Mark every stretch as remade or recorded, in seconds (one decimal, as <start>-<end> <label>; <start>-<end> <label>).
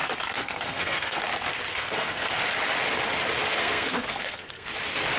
0.0-1.2 remade; 1.2-1.7 recorded; 1.7-2.4 remade; 2.4-3.6 recorded; 3.6-4.7 remade; 4.7-5.2 recorded